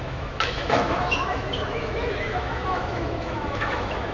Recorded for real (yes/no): no